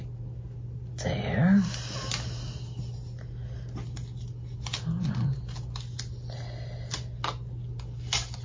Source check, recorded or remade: recorded